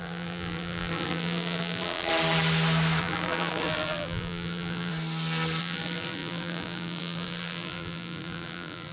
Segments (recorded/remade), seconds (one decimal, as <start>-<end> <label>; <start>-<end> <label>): 0.0-2.1 remade; 2.1-3.0 recorded; 3.0-4.9 remade; 4.9-5.6 recorded; 5.6-8.9 remade